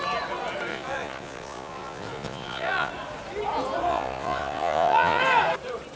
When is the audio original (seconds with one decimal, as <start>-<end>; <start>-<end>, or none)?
0.0-0.7; 2.9-3.9; 5.2-6.0